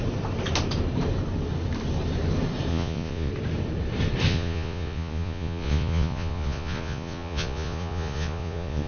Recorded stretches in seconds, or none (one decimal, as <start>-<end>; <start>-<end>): 0.0-2.7; 3.3-4.3

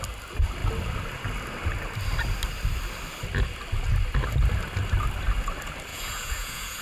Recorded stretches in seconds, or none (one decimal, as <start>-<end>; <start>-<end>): 0.0-5.9

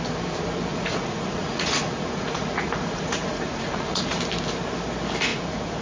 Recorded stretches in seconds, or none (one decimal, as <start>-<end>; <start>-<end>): 0.0-0.7; 4.2-5.3